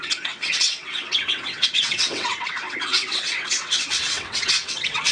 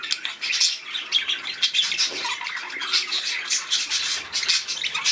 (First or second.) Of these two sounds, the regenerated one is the first